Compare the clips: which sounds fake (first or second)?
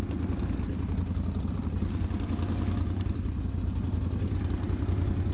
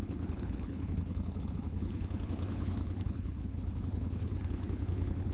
second